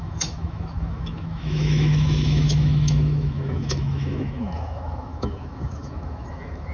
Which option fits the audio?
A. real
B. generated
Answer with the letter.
B